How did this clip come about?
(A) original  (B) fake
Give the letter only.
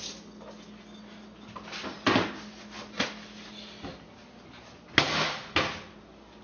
A